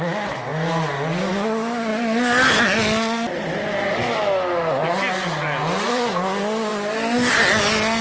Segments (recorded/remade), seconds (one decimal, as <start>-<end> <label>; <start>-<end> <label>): 0.0-8.0 recorded